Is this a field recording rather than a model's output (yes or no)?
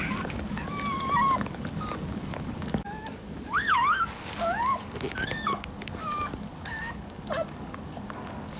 no